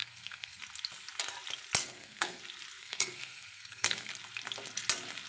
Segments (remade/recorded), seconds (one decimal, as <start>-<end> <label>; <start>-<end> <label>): 0.0-0.6 remade; 0.6-1.8 recorded; 1.8-2.4 remade; 2.4-2.8 recorded; 2.8-4.1 remade; 4.1-5.3 recorded